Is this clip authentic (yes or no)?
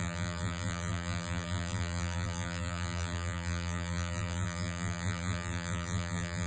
no